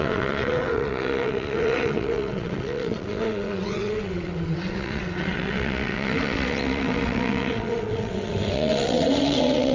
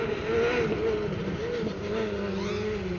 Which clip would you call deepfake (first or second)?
first